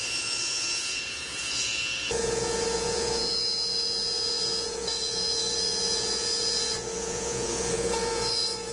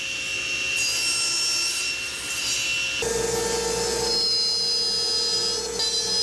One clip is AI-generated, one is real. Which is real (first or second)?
second